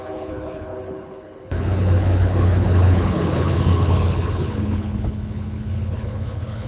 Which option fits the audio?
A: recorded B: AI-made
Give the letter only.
B